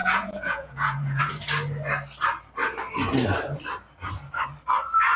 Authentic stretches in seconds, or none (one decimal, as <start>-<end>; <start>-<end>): 1.2-5.2

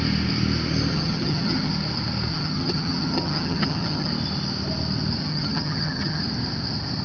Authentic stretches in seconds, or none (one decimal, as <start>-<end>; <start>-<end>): 0.0-0.9; 1.7-2.3; 4.1-5.2; 6.2-7.0